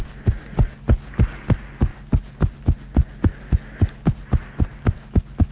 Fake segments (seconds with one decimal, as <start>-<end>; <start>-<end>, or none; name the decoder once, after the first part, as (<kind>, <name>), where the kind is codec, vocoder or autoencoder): none